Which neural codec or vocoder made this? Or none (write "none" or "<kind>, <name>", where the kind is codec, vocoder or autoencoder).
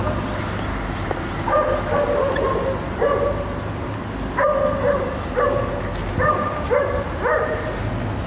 none